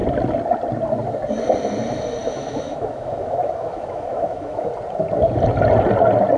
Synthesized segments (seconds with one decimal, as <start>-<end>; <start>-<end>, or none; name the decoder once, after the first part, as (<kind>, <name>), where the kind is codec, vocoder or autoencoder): 2.2-4.7 (autoencoder, DAC-VAE)

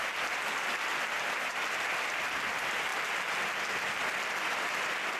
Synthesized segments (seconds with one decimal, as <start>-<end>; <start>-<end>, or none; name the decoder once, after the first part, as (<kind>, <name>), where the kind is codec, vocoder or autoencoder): 0.0-2.9 (vocoder, BigVGAN v2); 3.7-5.2

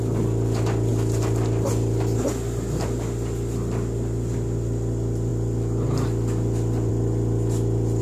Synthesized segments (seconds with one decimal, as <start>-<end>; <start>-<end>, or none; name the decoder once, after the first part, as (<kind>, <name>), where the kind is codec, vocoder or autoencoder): none

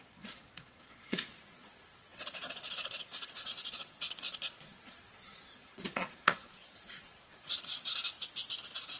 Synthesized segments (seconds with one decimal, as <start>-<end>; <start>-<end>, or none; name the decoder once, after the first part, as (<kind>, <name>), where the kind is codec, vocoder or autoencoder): 0.0-7.7 (vocoder, Vocos)

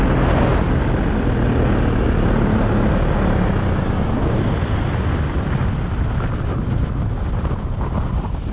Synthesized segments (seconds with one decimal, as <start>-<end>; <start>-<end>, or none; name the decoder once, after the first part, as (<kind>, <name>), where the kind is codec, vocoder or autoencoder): none

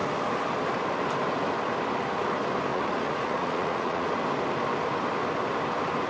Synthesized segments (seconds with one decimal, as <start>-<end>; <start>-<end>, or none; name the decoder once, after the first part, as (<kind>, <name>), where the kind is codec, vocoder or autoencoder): 2.7-4.1 (vocoder, Vocos)